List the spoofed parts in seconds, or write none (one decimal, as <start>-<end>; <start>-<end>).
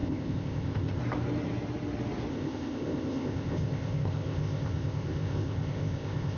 0.0-1.0; 2.3-6.4